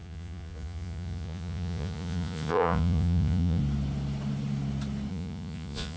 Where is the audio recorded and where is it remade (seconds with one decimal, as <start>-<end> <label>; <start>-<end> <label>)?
0.0-3.6 remade; 3.6-5.1 recorded; 5.1-6.0 remade